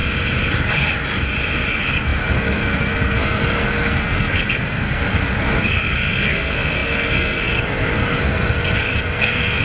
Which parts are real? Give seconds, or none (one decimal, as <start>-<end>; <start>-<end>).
0.0-1.7